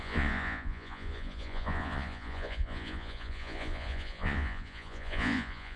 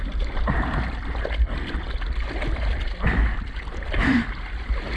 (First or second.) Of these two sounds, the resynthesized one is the first